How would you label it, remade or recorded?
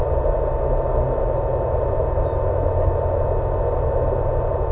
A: recorded